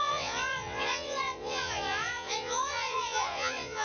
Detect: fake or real fake